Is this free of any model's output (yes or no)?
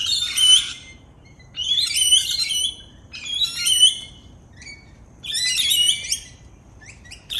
no